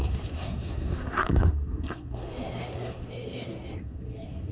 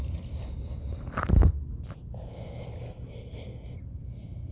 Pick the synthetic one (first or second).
first